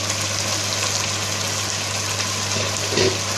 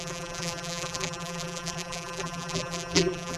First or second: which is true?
first